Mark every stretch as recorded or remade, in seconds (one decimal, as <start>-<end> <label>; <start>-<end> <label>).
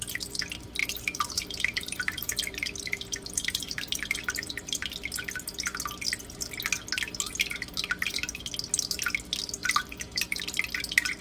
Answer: 0.0-0.8 recorded; 0.8-4.8 remade; 4.8-9.6 recorded; 9.6-10.4 remade; 10.4-11.2 recorded